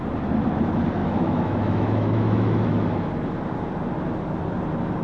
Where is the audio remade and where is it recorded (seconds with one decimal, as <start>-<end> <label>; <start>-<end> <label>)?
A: 0.0-1.0 recorded; 1.0-3.1 remade; 3.1-5.0 recorded